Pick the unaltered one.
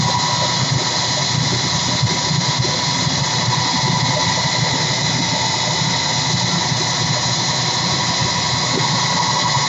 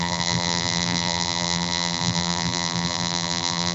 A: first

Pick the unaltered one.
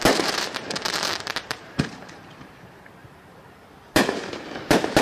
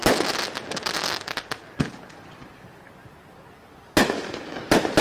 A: second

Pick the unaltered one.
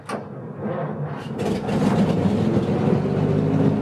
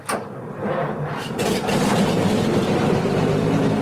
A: first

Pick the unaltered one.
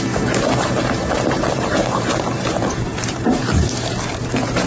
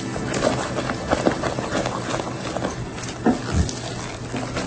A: second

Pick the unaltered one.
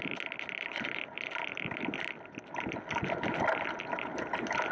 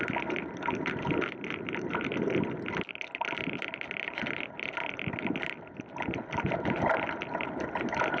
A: first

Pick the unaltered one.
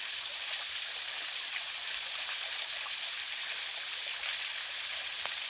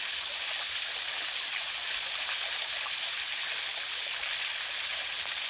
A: second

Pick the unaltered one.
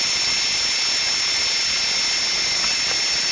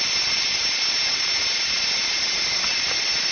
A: first